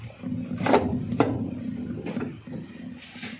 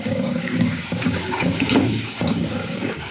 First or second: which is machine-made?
second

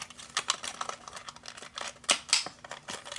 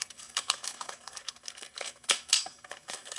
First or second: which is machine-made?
second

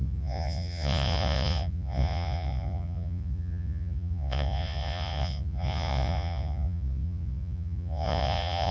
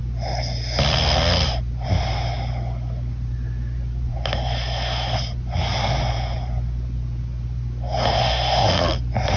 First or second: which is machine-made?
first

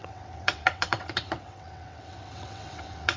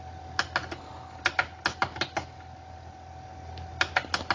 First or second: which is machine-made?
first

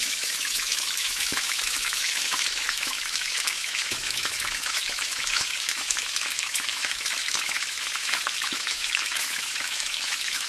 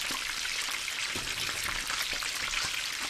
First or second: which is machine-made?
first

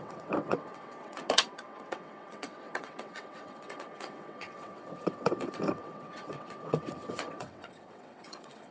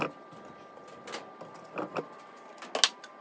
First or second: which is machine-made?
first